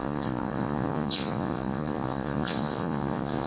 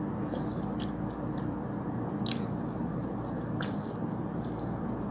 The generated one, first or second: first